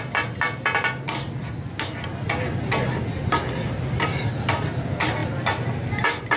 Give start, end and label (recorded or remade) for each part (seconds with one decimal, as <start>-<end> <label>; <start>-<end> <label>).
0.0-6.4 recorded